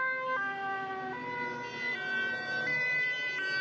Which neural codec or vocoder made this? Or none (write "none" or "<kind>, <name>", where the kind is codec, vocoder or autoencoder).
none